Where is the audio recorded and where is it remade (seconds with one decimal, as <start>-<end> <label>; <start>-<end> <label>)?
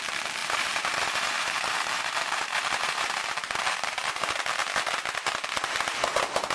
0.0-0.4 recorded; 0.4-4.1 remade; 4.1-6.5 recorded